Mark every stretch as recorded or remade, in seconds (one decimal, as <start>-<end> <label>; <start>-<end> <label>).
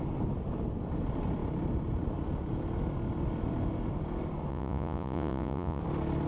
0.0-4.5 recorded; 4.5-5.8 remade; 5.8-6.3 recorded